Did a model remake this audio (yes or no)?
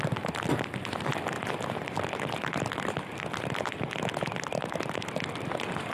no